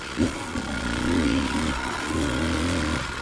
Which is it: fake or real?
fake